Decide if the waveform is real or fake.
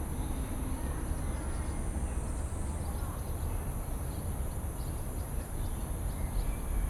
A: real